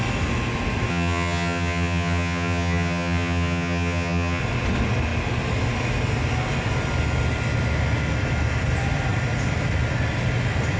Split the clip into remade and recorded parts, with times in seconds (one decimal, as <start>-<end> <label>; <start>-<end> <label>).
0.0-0.9 recorded; 0.9-4.4 remade; 4.4-10.8 recorded